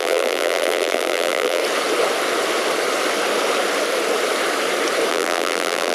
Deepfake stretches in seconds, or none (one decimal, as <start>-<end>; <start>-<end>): 0.0-1.6; 5.1-5.9